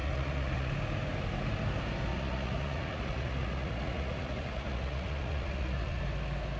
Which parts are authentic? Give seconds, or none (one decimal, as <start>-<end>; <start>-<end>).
0.7-2.1; 6.0-6.6